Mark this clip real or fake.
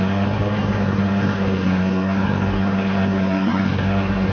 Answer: fake